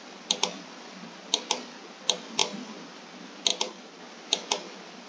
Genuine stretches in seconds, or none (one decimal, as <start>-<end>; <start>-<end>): 0.0-5.1